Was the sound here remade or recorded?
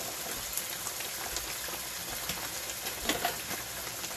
recorded